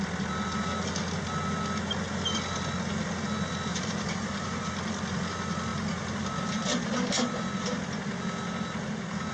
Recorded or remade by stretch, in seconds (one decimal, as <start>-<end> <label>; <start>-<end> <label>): 0.0-3.7 recorded; 3.7-4.7 remade; 4.7-9.3 recorded